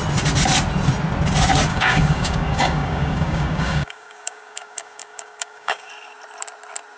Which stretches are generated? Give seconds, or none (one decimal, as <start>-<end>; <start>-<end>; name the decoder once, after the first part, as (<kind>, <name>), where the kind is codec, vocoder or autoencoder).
1.7-5.9 (codec, DAC)